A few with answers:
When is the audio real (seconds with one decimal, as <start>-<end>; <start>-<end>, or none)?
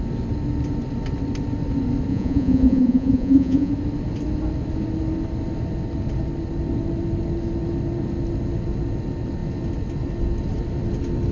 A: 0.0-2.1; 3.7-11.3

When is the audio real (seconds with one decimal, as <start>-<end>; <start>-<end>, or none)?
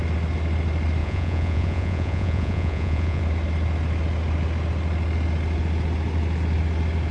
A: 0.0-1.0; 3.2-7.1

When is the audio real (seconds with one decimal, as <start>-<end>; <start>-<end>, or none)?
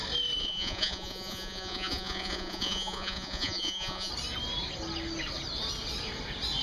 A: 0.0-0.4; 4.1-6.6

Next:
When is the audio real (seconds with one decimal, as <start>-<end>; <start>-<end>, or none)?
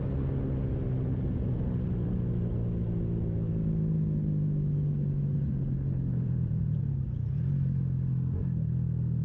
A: 0.0-6.1; 6.8-9.2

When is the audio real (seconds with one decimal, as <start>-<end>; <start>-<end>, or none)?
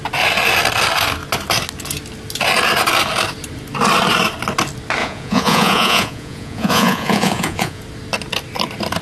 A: 0.0-5.0; 7.8-9.0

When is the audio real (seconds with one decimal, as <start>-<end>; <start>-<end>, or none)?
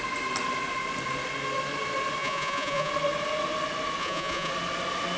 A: 0.0-2.2; 2.9-4.0; 4.5-5.2